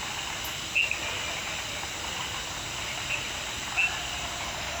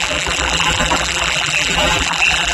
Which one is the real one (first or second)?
first